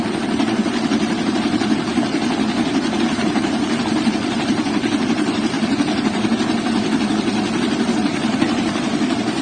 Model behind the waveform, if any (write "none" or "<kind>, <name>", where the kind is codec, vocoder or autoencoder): vocoder, BigVGAN v2